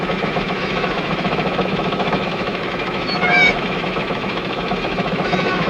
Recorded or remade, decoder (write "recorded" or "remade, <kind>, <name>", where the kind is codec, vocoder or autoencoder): remade, autoencoder, DAC-VAE